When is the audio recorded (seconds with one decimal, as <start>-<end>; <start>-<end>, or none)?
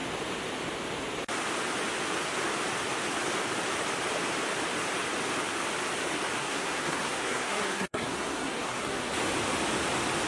0.0-6.4; 9.1-10.3